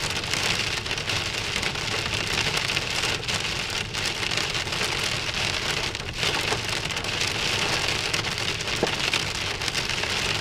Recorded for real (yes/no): yes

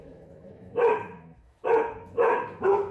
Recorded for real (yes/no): no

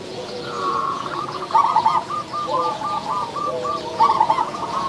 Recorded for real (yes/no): no